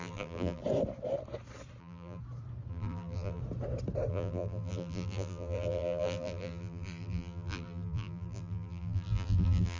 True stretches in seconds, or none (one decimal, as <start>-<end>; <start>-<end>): 0.6-1.8; 2.2-2.7; 3.4-4.1